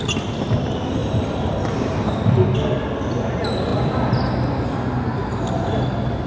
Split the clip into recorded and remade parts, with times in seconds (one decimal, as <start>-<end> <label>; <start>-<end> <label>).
0.0-1.0 recorded; 1.0-2.2 remade; 2.2-6.3 recorded